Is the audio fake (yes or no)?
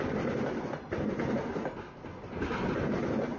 no